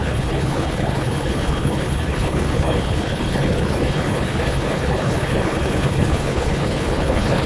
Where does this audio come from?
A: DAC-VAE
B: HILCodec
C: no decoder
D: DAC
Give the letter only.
B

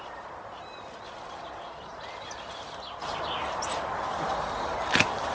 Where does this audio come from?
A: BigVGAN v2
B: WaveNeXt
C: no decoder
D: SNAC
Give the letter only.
C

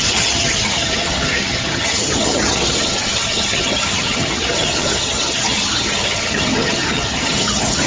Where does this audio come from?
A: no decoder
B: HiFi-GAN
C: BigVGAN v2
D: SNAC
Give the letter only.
B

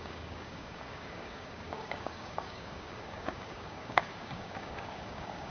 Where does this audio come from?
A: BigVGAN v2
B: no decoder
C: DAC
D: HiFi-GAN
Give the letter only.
C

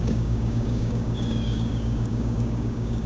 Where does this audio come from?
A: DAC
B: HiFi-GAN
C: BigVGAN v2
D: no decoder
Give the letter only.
A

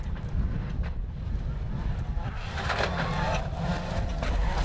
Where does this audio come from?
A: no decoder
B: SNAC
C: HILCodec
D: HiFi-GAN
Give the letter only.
A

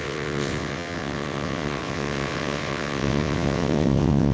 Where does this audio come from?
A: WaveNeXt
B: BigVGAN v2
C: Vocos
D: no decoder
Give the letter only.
A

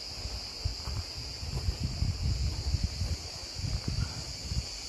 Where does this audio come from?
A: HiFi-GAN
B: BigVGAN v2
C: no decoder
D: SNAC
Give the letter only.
C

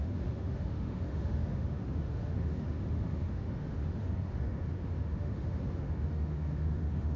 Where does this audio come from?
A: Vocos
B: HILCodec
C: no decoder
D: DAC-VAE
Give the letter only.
D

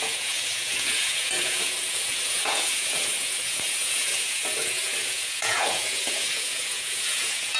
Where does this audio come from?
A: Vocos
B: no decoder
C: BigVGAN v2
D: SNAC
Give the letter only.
A